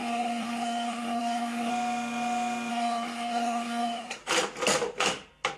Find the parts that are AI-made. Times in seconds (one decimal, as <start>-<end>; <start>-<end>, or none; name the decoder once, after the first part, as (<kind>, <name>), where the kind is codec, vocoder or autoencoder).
0.0-1.7 (codec, SNAC); 2.7-4.2